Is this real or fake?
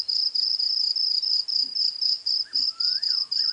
fake